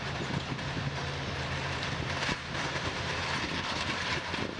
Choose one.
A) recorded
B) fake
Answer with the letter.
B